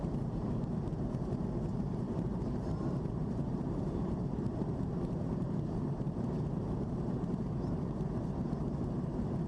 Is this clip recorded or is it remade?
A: remade